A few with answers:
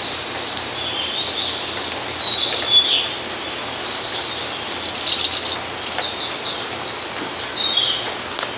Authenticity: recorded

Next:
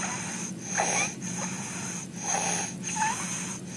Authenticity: recorded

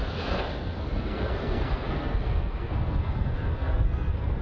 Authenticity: remade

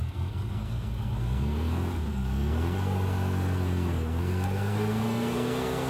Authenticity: remade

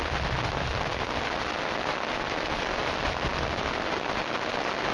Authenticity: recorded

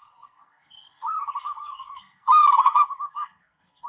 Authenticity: remade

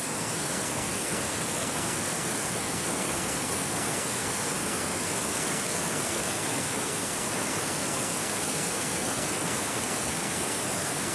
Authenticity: remade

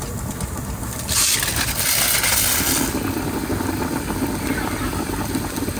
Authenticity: recorded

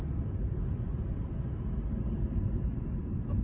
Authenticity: recorded